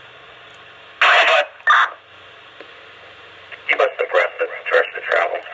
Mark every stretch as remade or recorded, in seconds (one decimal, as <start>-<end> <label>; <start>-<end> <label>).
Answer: 0.0-0.5 remade; 0.5-3.8 recorded; 3.8-5.5 remade